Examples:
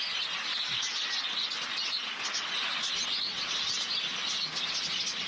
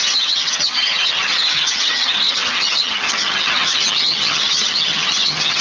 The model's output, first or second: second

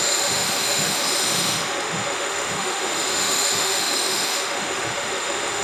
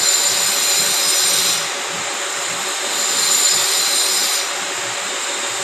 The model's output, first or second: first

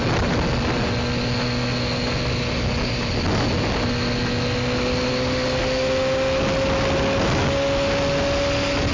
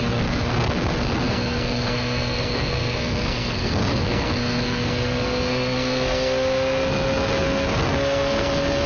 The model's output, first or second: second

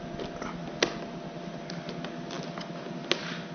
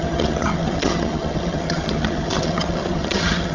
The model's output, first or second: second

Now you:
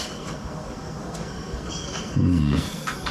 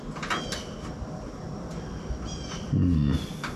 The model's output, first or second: first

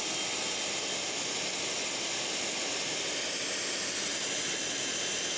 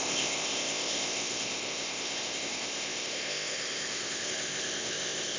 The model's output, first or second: second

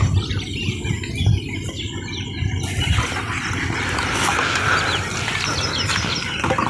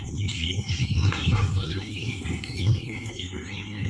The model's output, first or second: second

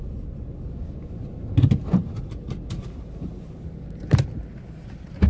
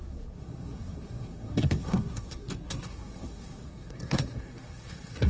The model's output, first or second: second